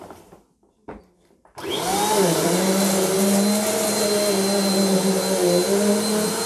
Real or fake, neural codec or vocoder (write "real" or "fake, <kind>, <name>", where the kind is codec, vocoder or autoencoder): real